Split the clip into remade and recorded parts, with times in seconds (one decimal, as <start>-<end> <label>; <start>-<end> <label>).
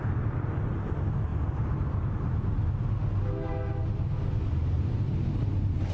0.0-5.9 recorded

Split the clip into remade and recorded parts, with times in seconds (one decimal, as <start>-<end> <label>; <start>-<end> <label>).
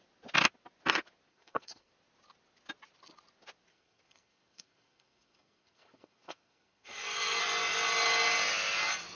0.0-1.3 recorded; 1.3-1.9 remade; 1.9-3.7 recorded; 3.7-7.4 remade; 7.4-9.2 recorded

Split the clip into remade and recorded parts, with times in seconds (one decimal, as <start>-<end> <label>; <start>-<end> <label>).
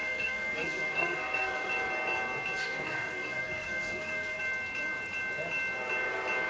0.0-1.7 remade; 1.7-2.6 recorded; 2.6-4.4 remade; 4.4-6.5 recorded